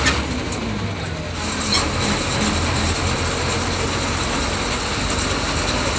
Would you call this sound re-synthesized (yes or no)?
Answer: no